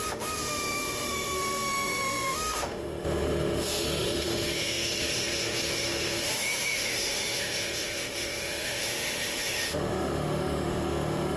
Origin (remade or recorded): remade